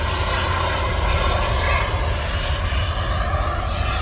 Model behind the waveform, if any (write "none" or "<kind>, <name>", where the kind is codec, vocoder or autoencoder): none